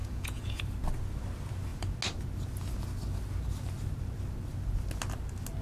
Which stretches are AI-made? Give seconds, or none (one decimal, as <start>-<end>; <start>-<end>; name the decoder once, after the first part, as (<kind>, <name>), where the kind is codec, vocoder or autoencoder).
0.0-0.6 (vocoder, Vocos)